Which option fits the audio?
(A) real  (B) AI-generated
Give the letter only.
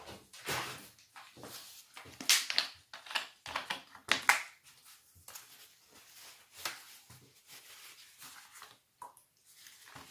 A